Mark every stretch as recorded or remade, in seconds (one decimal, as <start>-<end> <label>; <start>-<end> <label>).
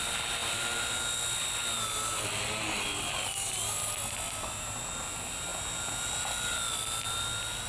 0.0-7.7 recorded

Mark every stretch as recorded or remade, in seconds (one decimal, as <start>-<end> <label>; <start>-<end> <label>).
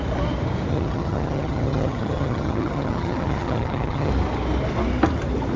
0.0-0.7 recorded; 0.7-4.1 remade; 4.1-5.6 recorded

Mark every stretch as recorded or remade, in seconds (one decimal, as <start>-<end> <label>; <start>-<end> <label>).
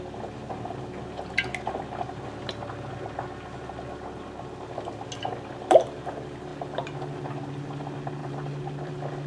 0.0-8.2 recorded; 8.2-8.9 remade; 8.9-9.3 recorded